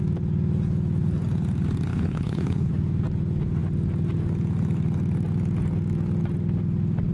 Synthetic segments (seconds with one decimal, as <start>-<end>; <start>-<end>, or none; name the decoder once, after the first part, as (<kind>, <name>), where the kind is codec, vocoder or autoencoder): 1.9-2.7 (codec, HILCodec)